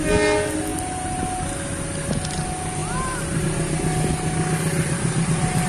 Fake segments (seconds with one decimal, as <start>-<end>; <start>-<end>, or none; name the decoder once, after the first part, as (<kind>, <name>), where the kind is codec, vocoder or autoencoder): none